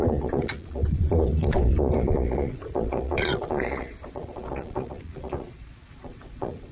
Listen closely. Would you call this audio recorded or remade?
remade